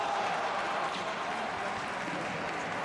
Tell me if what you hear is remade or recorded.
recorded